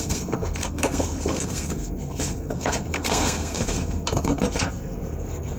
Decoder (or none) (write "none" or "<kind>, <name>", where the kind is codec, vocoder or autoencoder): codec, SNAC